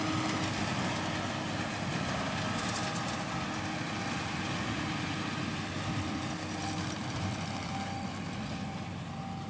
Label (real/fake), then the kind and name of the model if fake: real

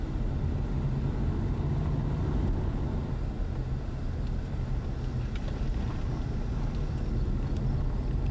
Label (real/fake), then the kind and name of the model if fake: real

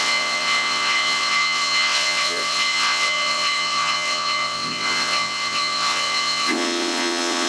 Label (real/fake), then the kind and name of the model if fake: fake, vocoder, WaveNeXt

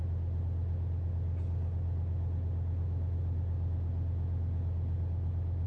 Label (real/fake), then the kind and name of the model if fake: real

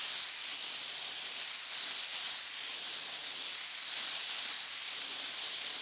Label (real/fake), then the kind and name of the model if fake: real